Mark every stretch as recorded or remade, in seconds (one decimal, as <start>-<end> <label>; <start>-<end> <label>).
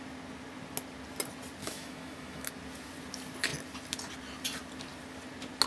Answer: 0.0-1.6 recorded; 1.6-2.5 remade; 2.5-5.7 recorded